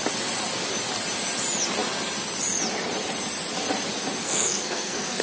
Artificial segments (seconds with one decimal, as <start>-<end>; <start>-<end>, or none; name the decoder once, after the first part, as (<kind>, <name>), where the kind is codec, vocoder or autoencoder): 4.2-5.2 (codec, SNAC)